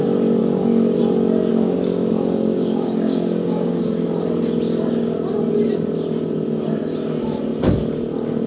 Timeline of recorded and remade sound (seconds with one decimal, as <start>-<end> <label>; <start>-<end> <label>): 0.0-0.4 recorded; 0.4-1.0 remade; 1.0-1.5 recorded; 1.5-3.8 remade; 3.8-8.5 recorded